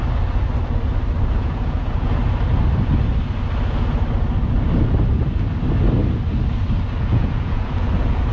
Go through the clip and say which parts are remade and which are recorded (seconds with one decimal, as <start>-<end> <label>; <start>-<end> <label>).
0.0-1.4 recorded; 1.4-2.2 remade; 2.2-7.0 recorded; 7.0-8.3 remade